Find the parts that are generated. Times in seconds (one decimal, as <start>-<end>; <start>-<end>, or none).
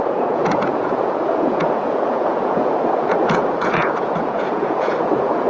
0.0-5.5